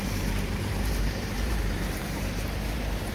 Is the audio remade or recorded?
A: remade